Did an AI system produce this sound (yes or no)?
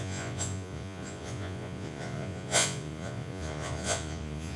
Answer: yes